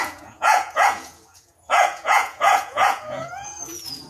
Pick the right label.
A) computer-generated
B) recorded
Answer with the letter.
A